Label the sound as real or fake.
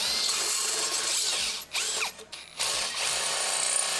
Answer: real